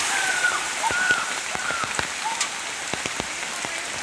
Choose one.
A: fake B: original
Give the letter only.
B